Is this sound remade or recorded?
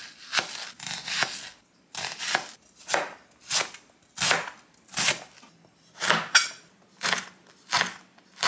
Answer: recorded